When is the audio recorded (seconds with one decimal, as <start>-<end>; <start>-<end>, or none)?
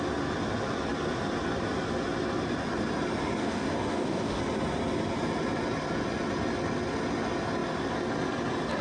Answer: 0.0-3.4; 4.4-8.8